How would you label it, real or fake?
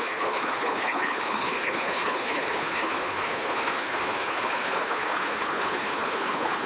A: fake